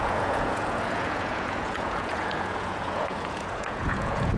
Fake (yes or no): yes